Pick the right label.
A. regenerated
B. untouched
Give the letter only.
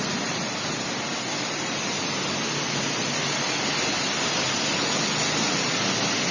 B